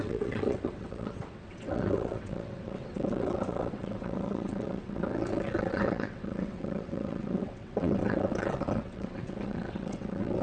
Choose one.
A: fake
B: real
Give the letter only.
A